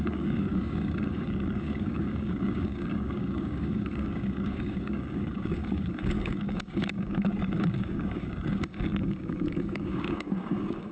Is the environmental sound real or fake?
fake